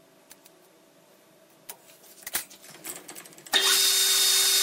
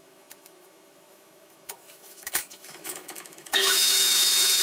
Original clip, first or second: first